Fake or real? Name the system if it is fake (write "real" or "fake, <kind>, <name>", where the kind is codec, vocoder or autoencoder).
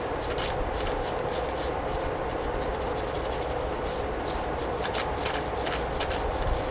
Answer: real